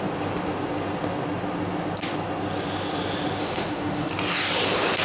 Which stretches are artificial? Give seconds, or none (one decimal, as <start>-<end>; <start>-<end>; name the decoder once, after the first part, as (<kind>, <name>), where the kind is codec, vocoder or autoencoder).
3.4-4.1 (autoencoder, DAC-VAE)